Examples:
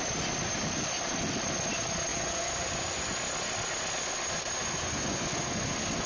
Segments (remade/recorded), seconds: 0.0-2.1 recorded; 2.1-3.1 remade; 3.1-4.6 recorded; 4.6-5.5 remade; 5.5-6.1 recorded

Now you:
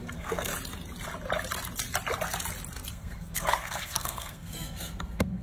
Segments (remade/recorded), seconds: 0.0-0.5 remade; 0.5-2.9 recorded; 2.9-5.4 remade